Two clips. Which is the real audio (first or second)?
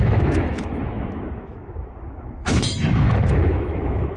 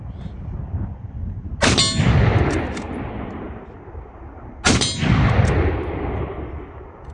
second